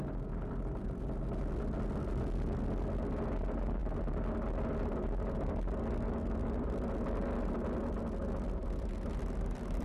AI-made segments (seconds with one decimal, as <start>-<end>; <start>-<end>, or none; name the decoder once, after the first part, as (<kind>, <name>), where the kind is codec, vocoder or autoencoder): none